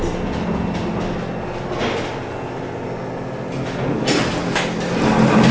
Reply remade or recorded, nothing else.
recorded